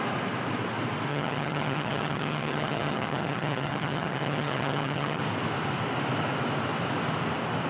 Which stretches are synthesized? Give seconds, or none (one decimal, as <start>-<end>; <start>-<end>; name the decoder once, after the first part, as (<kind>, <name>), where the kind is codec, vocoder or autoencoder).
1.1-5.2 (vocoder, HiFi-GAN)